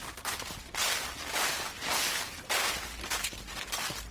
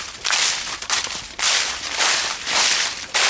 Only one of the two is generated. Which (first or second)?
second